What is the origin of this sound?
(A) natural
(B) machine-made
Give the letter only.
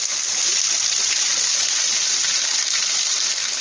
A